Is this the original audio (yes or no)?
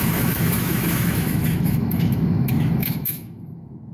no